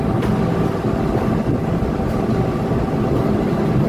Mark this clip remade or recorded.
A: recorded